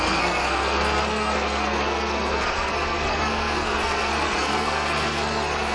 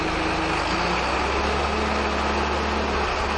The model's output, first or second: first